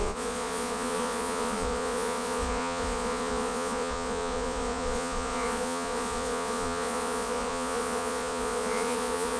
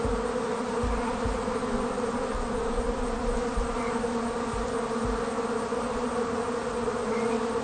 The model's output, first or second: first